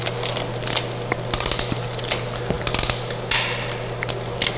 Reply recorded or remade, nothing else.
recorded